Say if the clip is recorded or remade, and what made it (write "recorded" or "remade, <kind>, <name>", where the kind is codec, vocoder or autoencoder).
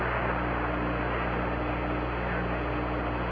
recorded